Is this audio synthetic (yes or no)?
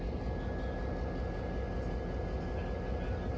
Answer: no